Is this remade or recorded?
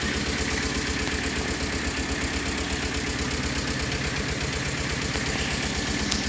recorded